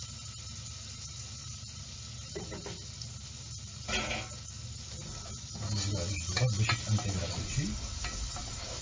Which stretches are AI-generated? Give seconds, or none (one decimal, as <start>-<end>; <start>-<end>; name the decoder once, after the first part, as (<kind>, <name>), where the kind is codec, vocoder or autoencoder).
1.4-2.3 (vocoder, BigVGAN v2)